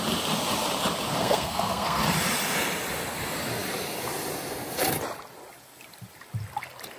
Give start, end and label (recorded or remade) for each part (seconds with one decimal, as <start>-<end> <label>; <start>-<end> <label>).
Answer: 0.0-1.2 recorded; 1.2-2.0 remade; 2.0-7.0 recorded